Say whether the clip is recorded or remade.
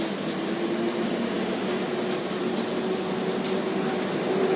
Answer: recorded